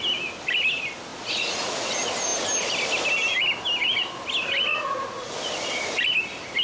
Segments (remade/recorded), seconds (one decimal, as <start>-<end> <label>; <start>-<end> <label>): 0.0-1.1 recorded; 1.1-1.9 remade; 1.9-4.7 recorded; 4.7-5.3 remade; 5.3-6.6 recorded